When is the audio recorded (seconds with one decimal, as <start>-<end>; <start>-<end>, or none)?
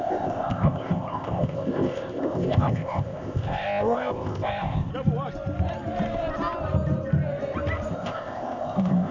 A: 4.9-7.9